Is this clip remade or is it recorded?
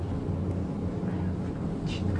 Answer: recorded